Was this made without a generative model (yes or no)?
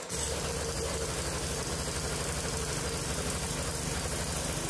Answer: yes